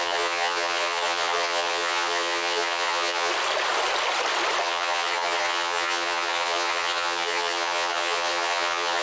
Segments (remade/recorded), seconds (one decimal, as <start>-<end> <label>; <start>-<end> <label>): 0.0-3.3 remade; 3.3-4.6 recorded; 4.6-9.0 remade